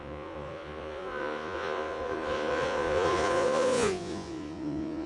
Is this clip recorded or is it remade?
remade